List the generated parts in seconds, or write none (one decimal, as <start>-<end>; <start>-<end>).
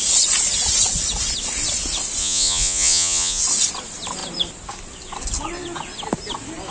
2.2-3.4